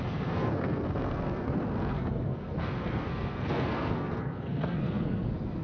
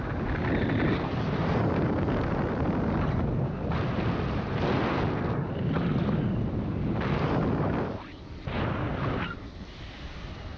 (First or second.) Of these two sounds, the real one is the second